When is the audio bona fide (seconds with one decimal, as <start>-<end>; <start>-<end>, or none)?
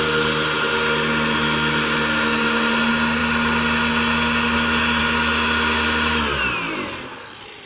0.0-7.7